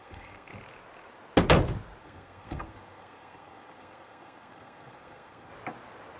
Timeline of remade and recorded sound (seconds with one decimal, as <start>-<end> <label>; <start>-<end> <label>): 0.0-0.5 remade; 0.5-2.0 recorded; 2.0-5.5 remade; 5.5-6.2 recorded